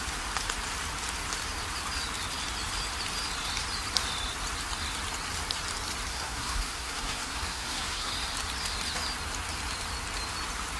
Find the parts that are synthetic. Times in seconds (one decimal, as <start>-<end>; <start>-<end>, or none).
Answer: 6.1-8.1